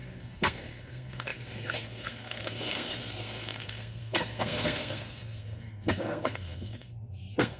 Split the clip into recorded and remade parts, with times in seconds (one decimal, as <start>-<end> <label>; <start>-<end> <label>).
0.0-7.6 remade